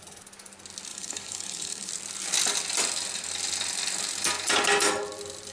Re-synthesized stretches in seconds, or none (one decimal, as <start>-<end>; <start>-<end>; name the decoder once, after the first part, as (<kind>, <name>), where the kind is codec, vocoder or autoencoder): 0.9-1.9 (codec, HILCodec)